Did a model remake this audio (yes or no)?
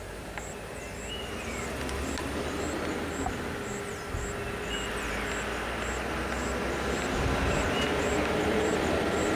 no